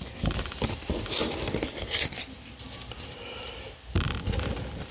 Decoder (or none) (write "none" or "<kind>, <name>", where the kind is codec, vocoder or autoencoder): vocoder, BigVGAN v2